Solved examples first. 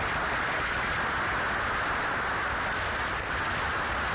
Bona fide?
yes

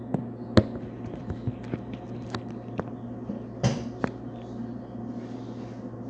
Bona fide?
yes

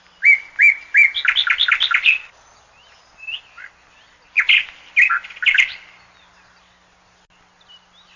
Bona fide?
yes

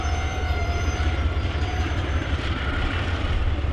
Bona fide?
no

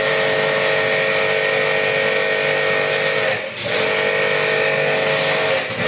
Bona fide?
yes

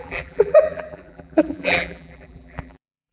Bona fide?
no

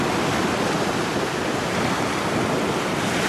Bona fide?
yes